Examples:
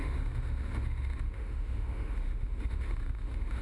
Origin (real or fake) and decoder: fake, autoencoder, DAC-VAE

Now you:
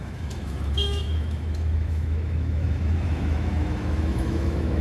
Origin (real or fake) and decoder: fake, autoencoder, DAC-VAE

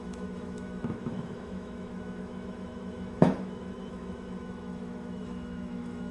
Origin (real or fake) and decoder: fake, autoencoder, DAC-VAE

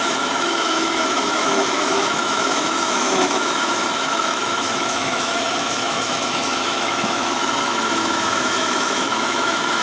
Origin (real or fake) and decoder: fake, autoencoder, DAC-VAE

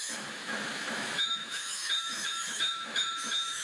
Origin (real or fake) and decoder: fake, autoencoder, DAC-VAE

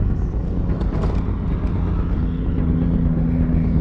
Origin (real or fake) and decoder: real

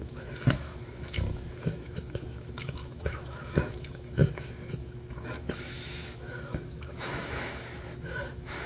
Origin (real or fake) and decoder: fake, autoencoder, DAC-VAE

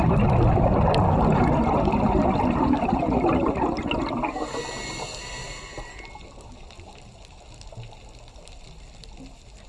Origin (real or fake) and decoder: real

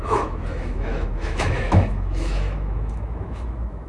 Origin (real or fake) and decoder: fake, autoencoder, DAC-VAE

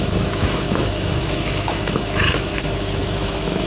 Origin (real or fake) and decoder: fake, autoencoder, DAC-VAE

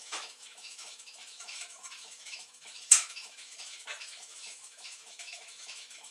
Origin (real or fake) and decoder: fake, autoencoder, DAC-VAE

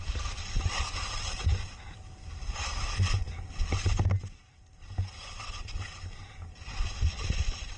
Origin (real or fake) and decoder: real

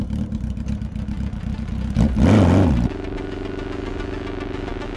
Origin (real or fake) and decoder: real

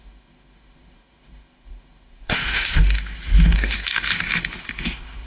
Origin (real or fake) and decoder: fake, autoencoder, DAC-VAE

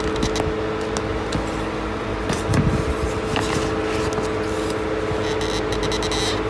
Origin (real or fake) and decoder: real